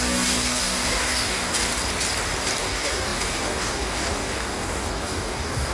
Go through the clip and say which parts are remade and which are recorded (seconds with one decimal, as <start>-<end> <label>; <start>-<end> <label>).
0.0-1.7 remade; 1.7-2.6 recorded; 2.6-5.7 remade